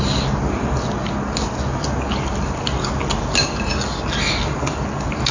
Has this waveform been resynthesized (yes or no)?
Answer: no